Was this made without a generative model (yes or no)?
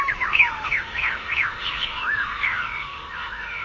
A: no